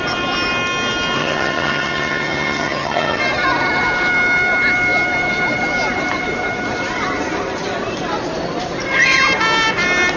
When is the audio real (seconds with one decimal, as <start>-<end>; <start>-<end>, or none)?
0.0-1.2; 3.2-10.2